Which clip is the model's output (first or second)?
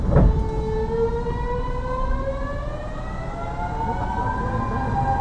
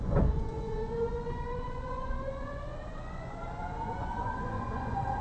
second